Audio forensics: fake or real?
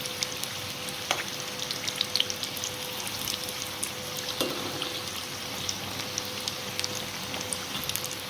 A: real